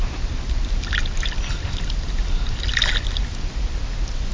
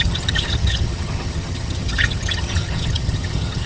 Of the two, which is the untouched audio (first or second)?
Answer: first